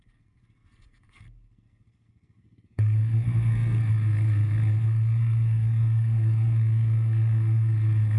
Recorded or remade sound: remade